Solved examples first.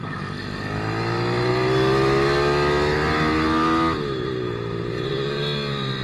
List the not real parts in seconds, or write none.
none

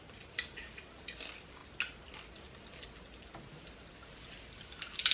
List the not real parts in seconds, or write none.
none